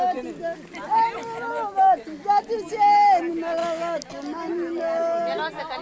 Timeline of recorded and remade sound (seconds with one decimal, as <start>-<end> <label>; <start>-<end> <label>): 0.0-5.8 recorded